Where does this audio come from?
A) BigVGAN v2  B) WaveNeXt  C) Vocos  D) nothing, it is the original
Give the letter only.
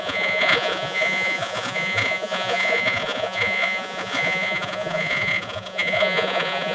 C